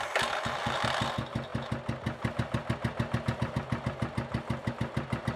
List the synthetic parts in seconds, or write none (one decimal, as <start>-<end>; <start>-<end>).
none